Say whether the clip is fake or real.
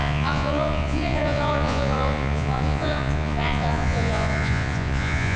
fake